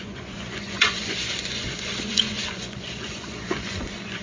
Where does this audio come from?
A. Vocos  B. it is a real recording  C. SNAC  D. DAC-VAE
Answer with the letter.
A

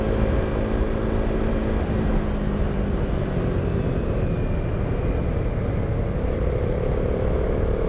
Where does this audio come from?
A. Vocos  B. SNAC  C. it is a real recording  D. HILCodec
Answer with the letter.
C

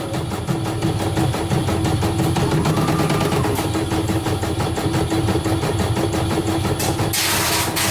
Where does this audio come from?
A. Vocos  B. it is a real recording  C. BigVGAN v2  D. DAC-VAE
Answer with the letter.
B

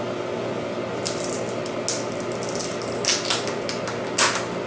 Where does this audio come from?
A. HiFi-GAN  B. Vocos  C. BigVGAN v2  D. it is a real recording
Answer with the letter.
D